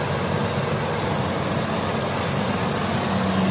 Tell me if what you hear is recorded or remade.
recorded